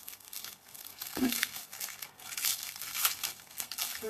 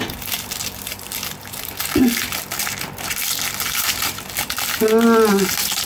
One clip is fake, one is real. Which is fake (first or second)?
first